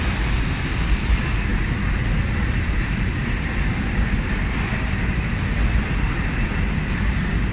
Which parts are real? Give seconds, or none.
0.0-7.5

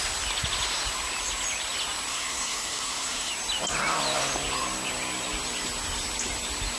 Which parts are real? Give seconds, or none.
0.0-2.1; 3.3-6.8

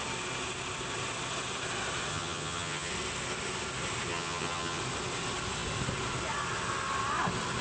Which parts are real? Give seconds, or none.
0.0-2.1; 2.9-4.1; 4.8-7.6

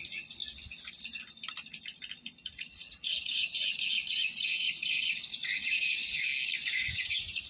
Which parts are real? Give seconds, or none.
0.4-2.5; 6.3-6.9

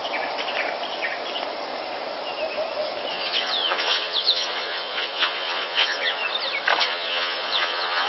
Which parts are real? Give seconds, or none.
0.0-3.1; 6.2-6.8

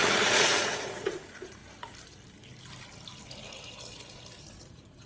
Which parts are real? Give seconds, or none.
1.6-4.4